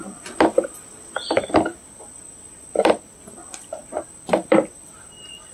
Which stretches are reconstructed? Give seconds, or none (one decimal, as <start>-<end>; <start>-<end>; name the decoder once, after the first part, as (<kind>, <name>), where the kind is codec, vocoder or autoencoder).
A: 0.0-5.5 (vocoder, BigVGAN v2)